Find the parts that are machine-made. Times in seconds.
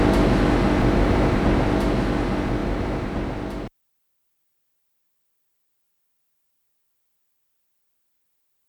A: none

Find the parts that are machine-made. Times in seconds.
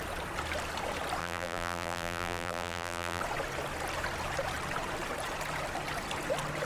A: 1.2-3.2 (vocoder, BigVGAN v2)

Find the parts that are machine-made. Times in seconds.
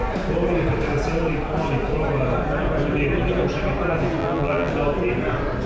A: 4.2-4.7 (vocoder, BigVGAN v2)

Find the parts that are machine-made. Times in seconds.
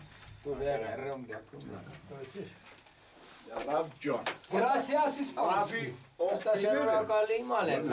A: 3.1-4.5 (vocoder, BigVGAN v2)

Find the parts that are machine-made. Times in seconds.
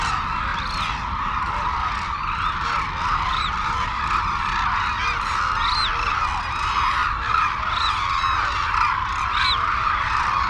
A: none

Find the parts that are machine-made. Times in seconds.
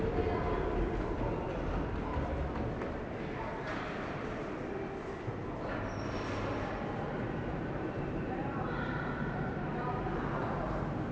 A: 7.5-10.4 (vocoder, BigVGAN v2)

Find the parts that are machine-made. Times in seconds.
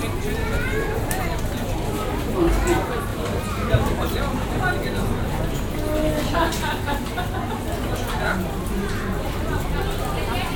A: 3.1-5.3 (vocoder, BigVGAN v2)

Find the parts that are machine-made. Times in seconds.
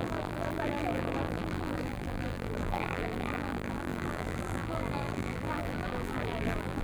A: 0.0-6.8 (vocoder, BigVGAN v2)